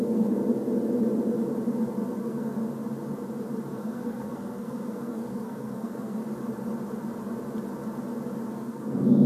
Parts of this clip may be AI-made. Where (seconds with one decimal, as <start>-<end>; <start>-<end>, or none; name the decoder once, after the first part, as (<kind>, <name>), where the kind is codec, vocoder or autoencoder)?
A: 0.0-0.4 (codec, SNAC); 2.2-2.6; 3.7-6.2; 8.5-9.3